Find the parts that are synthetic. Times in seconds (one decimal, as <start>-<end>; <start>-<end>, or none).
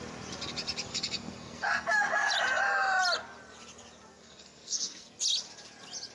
0.9-2.3; 4.1-5.2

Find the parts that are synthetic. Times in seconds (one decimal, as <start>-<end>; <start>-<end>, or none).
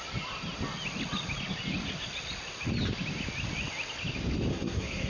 4.5-5.1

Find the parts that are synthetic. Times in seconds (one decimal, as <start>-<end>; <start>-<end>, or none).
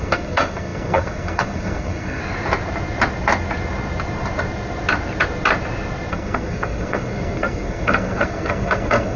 0.0-2.2; 6.1-9.2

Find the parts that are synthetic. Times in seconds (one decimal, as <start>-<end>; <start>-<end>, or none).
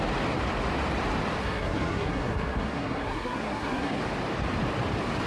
1.4-4.0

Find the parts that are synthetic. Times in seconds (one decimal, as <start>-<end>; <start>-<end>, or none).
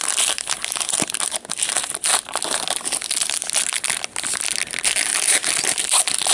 none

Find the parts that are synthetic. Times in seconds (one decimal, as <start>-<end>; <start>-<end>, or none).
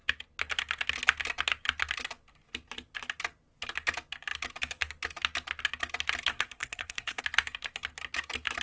6.3-7.2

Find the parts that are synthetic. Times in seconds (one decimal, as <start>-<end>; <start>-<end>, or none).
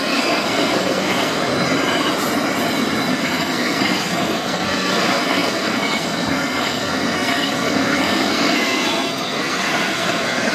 0.0-1.5; 3.1-10.5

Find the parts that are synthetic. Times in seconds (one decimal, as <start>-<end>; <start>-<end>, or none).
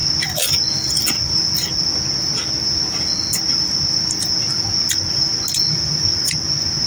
none